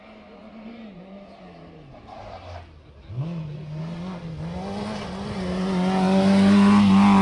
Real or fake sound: real